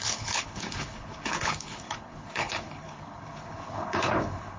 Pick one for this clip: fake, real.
fake